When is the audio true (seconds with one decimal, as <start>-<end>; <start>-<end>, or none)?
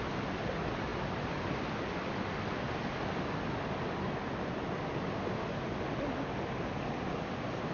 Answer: 0.0-7.7